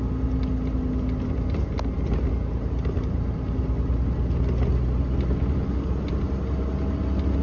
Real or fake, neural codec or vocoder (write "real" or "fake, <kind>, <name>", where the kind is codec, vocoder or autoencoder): real